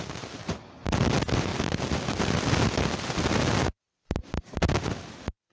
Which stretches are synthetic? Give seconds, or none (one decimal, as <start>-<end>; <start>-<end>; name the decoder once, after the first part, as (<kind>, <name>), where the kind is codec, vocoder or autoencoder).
none